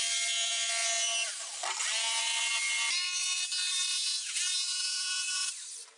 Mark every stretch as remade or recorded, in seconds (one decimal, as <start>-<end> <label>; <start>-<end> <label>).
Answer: 0.0-3.9 recorded; 3.9-5.5 remade; 5.5-6.0 recorded